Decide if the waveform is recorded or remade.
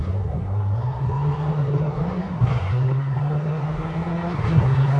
remade